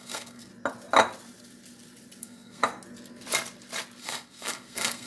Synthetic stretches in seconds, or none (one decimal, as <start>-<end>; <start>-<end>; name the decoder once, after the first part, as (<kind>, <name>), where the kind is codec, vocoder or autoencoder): 0.0-0.5 (codec, SNAC); 2.2-2.6; 4.0-5.1